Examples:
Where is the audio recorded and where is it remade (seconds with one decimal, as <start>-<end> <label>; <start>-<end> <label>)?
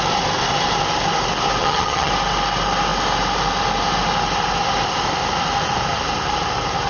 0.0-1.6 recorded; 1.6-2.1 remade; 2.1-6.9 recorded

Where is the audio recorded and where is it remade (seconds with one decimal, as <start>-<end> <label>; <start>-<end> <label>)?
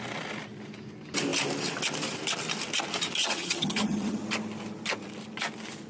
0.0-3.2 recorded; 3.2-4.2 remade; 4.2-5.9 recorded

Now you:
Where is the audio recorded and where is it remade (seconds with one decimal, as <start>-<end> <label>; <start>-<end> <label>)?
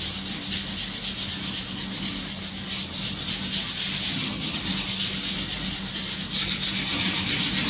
0.0-4.1 recorded; 4.1-4.6 remade; 4.6-7.7 recorded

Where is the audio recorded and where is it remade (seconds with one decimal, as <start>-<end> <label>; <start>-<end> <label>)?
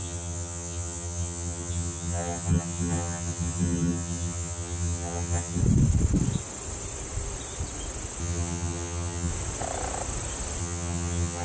0.0-5.6 remade; 5.6-8.2 recorded; 8.2-9.3 remade; 9.3-10.6 recorded; 10.6-11.4 remade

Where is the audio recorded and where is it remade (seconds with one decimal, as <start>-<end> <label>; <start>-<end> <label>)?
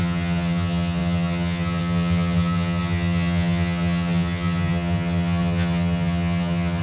0.0-6.8 remade